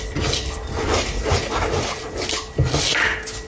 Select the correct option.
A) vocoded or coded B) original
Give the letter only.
B